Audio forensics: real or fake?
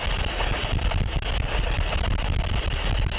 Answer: real